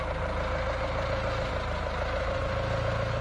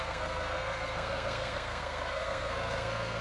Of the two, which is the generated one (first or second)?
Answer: second